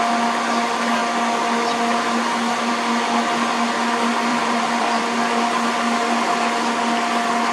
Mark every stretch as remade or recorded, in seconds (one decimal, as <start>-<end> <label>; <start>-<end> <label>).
0.0-4.3 recorded; 4.3-5.0 remade; 5.0-7.5 recorded